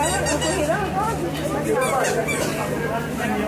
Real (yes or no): yes